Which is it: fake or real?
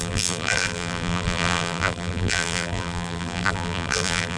fake